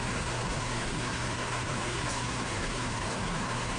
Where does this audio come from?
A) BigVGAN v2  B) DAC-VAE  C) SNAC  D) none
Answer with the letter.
C